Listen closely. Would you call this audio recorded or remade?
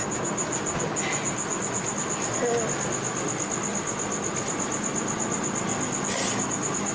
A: recorded